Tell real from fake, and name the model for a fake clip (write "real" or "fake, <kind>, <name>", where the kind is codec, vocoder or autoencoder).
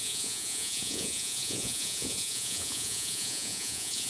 fake, vocoder, Vocos